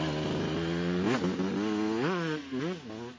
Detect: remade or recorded recorded